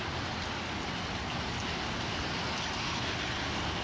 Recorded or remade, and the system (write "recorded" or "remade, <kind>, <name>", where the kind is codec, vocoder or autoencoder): recorded